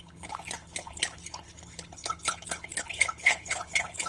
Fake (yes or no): yes